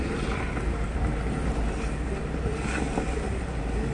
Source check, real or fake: real